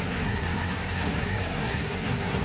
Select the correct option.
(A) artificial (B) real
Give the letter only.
A